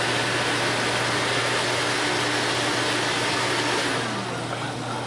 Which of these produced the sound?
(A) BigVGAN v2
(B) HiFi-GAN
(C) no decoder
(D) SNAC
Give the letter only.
C